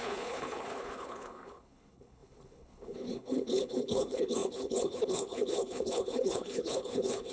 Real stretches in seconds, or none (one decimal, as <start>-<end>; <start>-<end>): none